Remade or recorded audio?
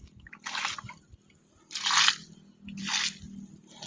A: recorded